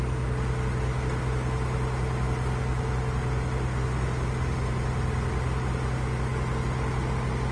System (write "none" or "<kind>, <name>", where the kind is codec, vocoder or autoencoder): none